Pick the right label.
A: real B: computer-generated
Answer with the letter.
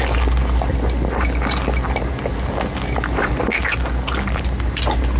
A